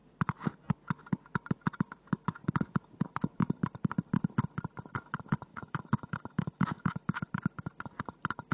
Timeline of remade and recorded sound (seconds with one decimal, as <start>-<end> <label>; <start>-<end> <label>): 0.0-5.5 recorded; 5.5-6.9 remade; 6.9-8.5 recorded

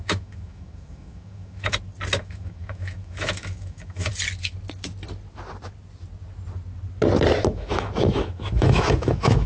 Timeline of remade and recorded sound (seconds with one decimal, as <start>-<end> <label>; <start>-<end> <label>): 0.0-1.7 remade; 1.7-2.2 recorded; 2.2-4.1 remade; 4.1-7.5 recorded; 7.5-9.5 remade

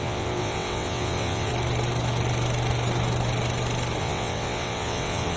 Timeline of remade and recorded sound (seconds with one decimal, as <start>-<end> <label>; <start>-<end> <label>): 0.0-1.5 remade; 1.5-4.0 recorded; 4.0-5.4 remade

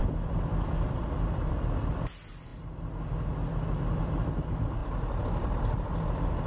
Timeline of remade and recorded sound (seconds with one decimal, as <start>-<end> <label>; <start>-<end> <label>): 0.0-2.5 remade; 2.5-4.0 recorded; 4.0-6.5 remade

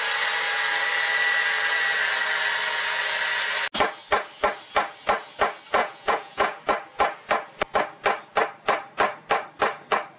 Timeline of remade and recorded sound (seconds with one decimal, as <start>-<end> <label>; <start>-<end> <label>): 0.0-5.8 recorded; 5.8-6.6 remade; 6.6-10.2 recorded

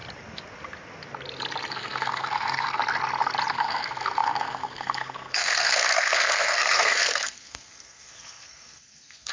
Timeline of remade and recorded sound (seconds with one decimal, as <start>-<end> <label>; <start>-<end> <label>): 0.0-1.7 recorded; 1.7-2.8 remade; 2.8-3.5 recorded; 3.5-9.3 remade